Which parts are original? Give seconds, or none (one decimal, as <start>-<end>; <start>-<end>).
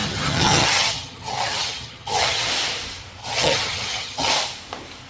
2.5-3.2; 4.3-5.1